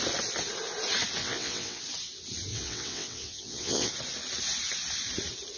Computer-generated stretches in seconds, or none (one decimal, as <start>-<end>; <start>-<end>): 1.2-1.8; 2.5-3.9